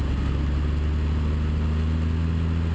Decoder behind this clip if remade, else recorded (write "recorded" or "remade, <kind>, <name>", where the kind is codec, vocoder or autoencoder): recorded